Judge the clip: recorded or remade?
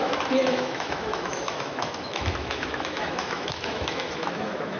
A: remade